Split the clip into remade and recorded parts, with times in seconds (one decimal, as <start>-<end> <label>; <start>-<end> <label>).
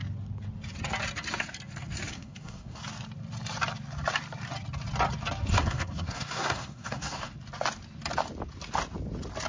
0.0-2.1 recorded; 2.1-2.8 remade; 2.8-5.6 recorded; 5.6-7.3 remade; 7.3-9.5 recorded